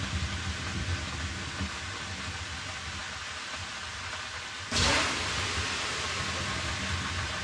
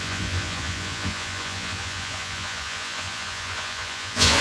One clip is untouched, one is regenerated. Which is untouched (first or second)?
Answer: first